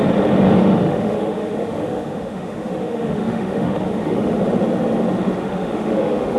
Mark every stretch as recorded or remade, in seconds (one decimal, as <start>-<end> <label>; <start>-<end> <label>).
0.0-0.6 recorded; 0.6-4.4 remade; 4.4-5.4 recorded; 5.4-6.4 remade